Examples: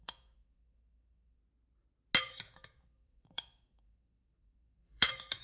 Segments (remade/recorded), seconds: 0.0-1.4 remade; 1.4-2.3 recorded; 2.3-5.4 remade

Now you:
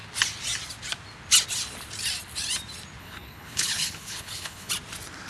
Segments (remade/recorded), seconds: 0.0-3.0 recorded; 3.0-4.7 remade; 4.7-5.3 recorded

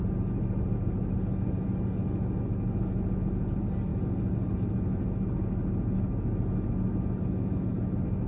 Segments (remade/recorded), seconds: 0.0-8.3 recorded

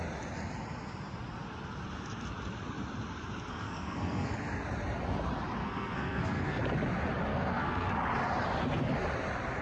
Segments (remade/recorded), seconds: 0.0-3.5 recorded; 3.5-4.3 remade; 4.3-5.6 recorded; 5.6-6.6 remade; 6.6-7.3 recorded; 7.3-7.9 remade; 7.9-9.6 recorded

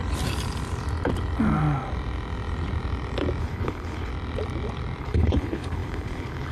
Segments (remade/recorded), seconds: 0.0-3.4 recorded; 3.4-4.1 remade; 4.1-5.0 recorded; 5.0-6.5 remade